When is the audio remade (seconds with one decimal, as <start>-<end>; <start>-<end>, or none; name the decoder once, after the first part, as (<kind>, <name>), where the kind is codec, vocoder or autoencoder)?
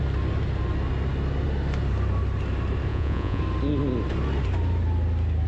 2.9-3.4 (vocoder, Vocos)